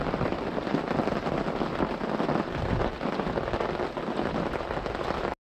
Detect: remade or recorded recorded